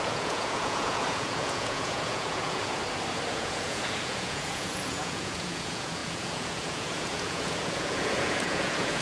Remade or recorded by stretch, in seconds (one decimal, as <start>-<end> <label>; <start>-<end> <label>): 0.0-2.8 remade; 2.8-3.3 recorded; 3.3-9.0 remade